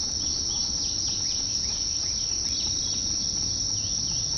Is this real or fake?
real